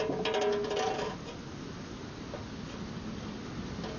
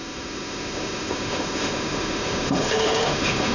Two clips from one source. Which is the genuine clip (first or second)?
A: first